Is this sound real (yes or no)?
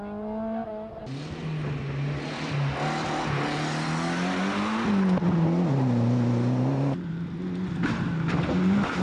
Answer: yes